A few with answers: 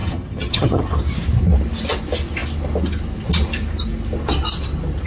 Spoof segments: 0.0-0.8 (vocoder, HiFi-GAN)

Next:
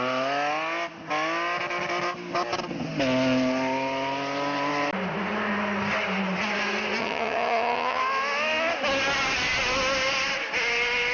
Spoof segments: 7.0-8.0 (vocoder, HiFi-GAN)